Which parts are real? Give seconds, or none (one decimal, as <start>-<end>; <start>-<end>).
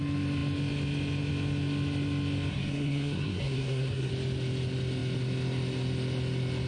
0.0-2.5; 4.1-6.7